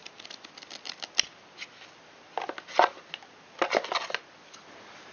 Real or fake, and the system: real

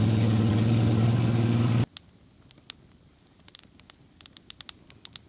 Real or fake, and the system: real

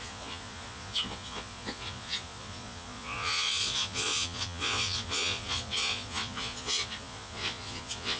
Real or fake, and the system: fake, vocoder, Vocos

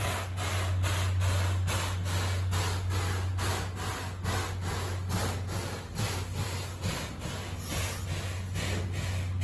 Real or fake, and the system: real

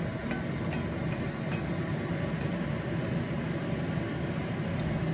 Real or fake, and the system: real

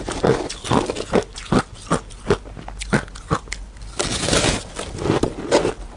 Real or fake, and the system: real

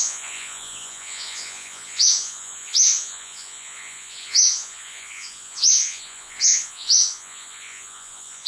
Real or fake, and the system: fake, vocoder, Vocos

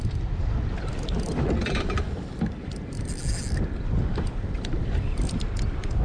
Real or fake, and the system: real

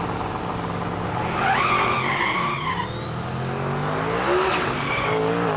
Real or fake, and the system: real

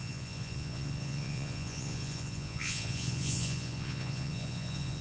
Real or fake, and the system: fake, vocoder, Vocos